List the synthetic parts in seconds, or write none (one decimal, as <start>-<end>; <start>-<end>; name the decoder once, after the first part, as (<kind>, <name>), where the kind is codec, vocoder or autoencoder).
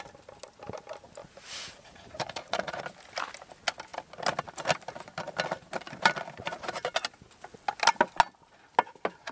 1.2-2.8 (vocoder, Vocos)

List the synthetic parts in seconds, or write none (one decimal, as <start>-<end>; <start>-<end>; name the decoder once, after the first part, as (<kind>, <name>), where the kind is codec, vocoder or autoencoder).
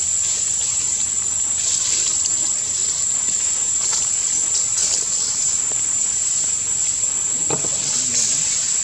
none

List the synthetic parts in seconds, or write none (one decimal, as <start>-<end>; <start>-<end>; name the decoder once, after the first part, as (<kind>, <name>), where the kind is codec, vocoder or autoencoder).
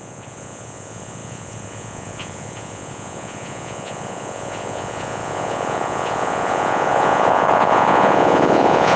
0.0-9.0 (vocoder, Vocos)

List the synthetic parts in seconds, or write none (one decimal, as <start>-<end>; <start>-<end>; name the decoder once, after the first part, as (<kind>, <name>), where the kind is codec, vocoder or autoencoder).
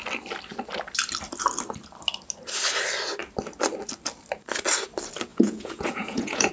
5.3-6.5 (vocoder, Vocos)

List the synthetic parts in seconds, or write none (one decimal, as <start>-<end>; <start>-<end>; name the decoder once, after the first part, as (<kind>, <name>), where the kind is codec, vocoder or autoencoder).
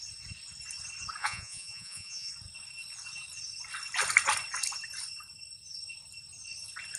1.2-2.3 (vocoder, Vocos)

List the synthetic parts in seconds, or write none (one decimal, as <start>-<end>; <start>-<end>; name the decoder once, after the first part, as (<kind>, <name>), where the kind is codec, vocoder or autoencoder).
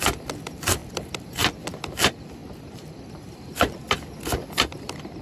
none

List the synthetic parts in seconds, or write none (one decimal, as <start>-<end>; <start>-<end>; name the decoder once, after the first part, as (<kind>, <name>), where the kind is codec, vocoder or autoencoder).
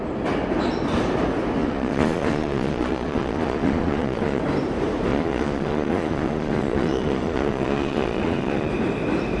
1.6-4.4 (vocoder, Vocos); 5.1-8.7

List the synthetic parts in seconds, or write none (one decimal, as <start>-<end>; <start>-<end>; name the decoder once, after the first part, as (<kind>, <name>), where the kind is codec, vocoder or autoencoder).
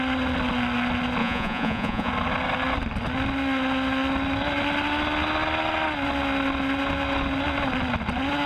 1.2-2.1 (vocoder, Vocos)